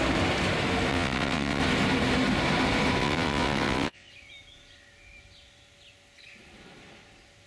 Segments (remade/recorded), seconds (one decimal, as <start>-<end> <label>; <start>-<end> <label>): 0.0-0.9 recorded; 0.9-1.6 remade; 1.6-3.0 recorded; 3.0-4.1 remade; 4.1-7.5 recorded